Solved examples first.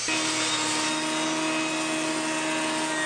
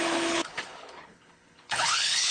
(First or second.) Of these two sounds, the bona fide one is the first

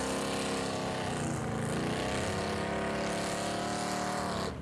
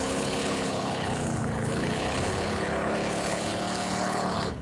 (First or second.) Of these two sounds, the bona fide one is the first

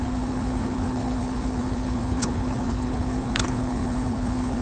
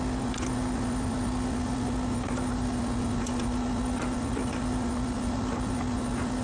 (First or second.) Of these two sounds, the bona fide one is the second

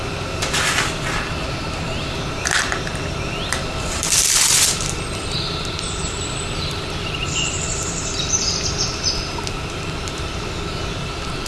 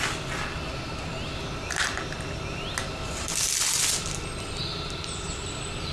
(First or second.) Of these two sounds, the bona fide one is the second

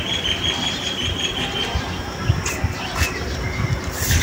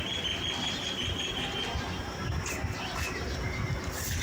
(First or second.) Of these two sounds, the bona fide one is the second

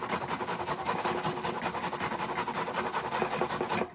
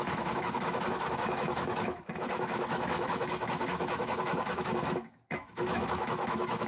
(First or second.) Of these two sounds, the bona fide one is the first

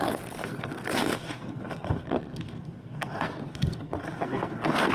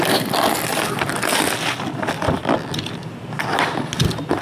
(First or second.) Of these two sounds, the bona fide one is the second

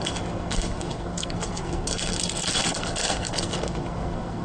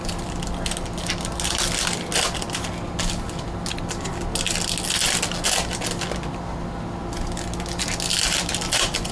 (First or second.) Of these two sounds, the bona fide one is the second